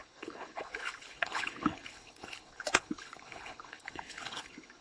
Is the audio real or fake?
fake